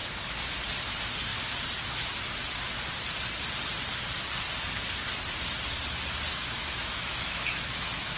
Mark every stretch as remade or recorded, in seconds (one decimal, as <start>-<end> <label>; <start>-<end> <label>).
0.0-0.6 remade; 0.6-6.3 recorded; 6.3-8.2 remade